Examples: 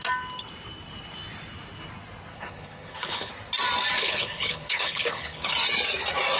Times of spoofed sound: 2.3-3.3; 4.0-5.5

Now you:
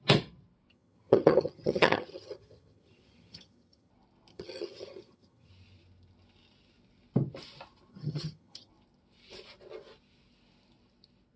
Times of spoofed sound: 0.7-3.9; 4.3-5.5; 7.9-8.7

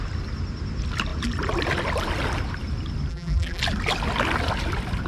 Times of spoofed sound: 3.1-3.6